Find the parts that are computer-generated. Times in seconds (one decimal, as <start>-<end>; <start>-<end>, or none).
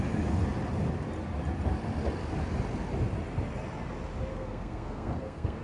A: 4.3-5.6